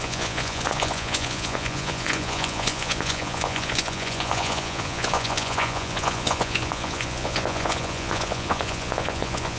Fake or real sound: fake